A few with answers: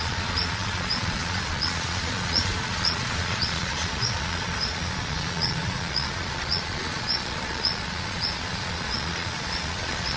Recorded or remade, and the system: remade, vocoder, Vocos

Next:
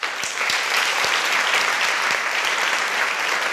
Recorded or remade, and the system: remade, vocoder, BigVGAN v2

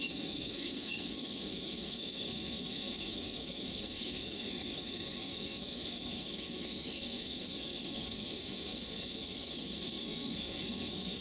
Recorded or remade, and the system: remade, codec, SNAC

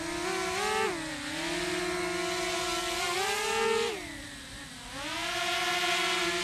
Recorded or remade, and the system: recorded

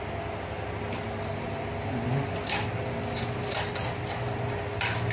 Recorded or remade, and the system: recorded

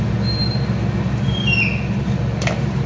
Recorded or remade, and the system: recorded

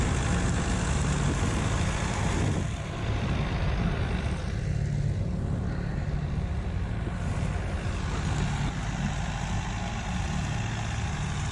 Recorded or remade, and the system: recorded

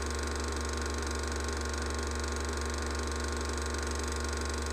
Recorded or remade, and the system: recorded